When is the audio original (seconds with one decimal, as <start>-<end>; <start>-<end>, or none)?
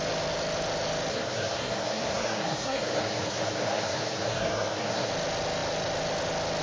0.0-1.1; 5.1-6.6